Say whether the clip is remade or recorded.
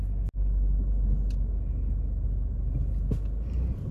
recorded